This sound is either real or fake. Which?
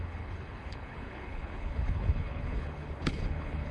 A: fake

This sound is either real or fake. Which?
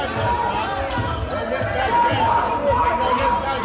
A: real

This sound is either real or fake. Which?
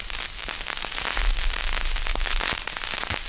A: real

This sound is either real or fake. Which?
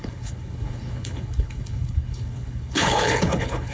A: fake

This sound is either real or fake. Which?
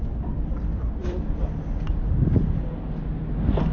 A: real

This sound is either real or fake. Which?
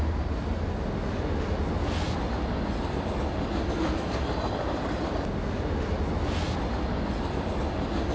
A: real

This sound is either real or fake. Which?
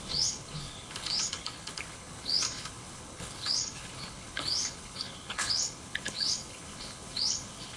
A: fake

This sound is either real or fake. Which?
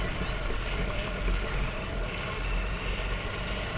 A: real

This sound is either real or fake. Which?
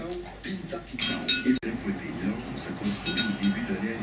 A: real